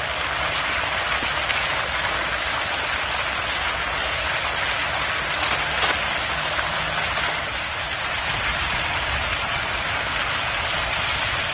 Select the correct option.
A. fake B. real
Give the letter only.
B